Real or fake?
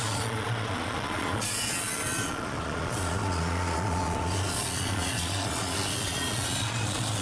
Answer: fake